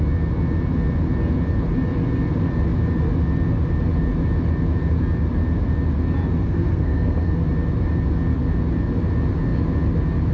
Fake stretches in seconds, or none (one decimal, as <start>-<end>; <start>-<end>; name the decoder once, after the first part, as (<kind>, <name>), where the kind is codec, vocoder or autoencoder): 6.4-7.3 (codec, SNAC)